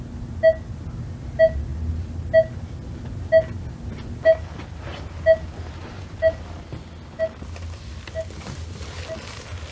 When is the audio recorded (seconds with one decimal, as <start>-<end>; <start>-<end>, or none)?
0.0-9.7